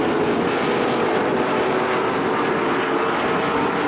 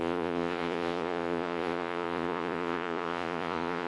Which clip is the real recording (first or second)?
first